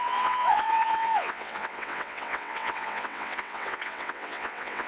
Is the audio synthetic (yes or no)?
yes